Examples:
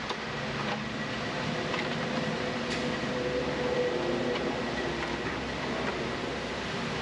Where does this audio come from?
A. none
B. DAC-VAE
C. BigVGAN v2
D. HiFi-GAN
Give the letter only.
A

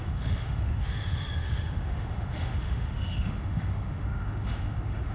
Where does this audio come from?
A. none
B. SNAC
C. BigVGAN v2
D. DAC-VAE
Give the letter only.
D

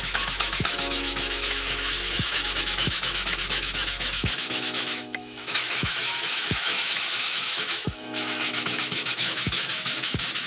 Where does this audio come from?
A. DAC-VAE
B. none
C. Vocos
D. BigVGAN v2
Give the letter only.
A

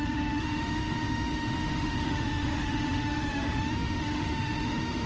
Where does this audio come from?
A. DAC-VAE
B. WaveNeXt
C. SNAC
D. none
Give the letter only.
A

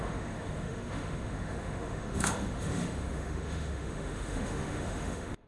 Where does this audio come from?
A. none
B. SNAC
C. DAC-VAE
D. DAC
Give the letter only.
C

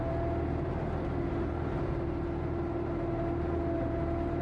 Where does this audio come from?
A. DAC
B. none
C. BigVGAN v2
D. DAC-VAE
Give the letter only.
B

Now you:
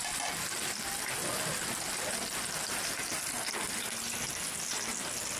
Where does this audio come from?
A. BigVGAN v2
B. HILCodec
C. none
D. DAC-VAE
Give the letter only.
C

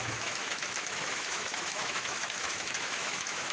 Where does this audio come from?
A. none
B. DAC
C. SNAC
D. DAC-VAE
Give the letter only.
D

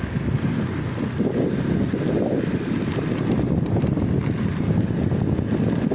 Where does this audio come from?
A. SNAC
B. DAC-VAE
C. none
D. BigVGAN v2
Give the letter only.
C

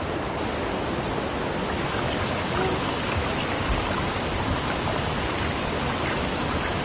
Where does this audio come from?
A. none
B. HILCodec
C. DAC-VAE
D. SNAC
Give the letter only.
A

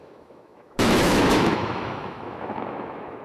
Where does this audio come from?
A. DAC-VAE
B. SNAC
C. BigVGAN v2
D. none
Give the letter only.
A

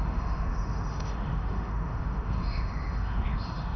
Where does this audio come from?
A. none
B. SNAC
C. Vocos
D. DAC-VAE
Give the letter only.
D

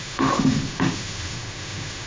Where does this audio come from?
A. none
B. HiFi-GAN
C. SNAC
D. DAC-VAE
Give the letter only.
D